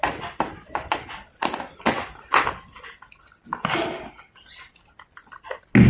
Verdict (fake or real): real